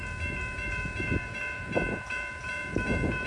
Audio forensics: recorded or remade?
remade